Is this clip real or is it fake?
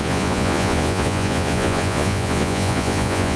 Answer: fake